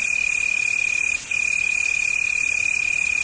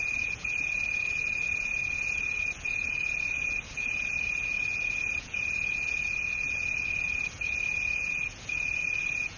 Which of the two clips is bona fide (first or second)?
first